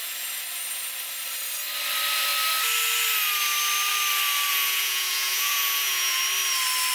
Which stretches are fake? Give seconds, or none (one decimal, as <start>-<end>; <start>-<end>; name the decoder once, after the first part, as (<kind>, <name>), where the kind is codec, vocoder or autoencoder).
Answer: 4.5-6.2 (vocoder, Vocos)